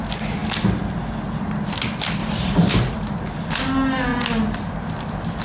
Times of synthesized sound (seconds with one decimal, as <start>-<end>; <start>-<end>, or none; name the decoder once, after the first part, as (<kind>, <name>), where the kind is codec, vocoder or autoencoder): 2.2-2.7 (vocoder, BigVGAN v2); 4.1-4.9